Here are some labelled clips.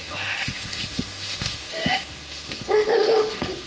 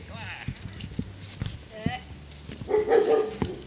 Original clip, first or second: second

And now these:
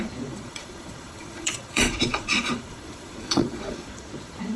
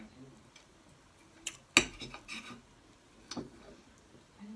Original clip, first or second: second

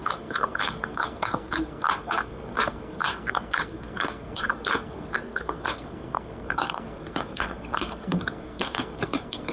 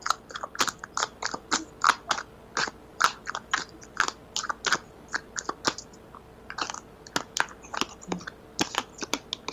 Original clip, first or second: second